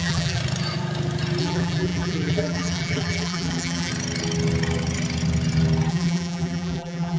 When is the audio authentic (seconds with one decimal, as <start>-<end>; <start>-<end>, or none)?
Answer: 0.4-1.4; 3.9-5.9